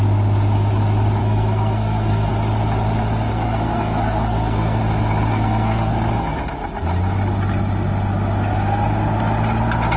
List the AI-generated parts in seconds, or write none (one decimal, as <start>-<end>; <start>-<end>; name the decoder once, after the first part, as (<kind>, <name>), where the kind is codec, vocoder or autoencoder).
1.2-2.3 (codec, SNAC); 3.3-4.8; 5.3-5.9